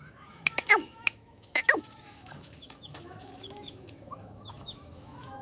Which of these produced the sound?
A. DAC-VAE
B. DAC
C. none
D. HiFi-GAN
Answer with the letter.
A